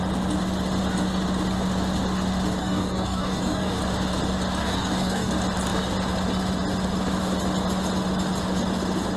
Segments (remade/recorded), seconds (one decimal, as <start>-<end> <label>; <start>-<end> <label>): 0.0-2.6 recorded; 2.6-3.8 remade; 3.8-4.6 recorded; 4.6-5.3 remade; 5.3-9.2 recorded